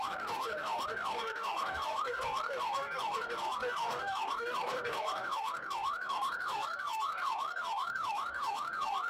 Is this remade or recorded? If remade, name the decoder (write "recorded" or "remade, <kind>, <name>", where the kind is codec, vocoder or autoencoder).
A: remade, codec, DAC